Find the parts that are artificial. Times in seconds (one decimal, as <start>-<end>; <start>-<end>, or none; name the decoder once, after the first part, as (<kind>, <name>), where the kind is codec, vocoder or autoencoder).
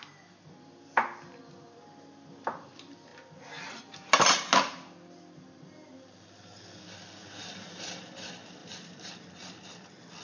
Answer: 8.6-9.1 (vocoder, BigVGAN v2)